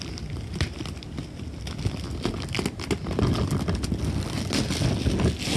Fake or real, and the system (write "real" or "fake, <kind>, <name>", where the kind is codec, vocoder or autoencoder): real